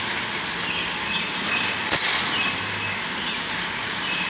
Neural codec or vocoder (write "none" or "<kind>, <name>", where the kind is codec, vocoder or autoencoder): none